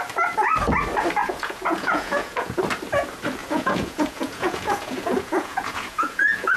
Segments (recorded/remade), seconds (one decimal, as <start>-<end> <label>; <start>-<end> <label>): 0.0-1.2 recorded; 1.2-2.6 remade; 2.6-3.4 recorded; 3.4-6.6 remade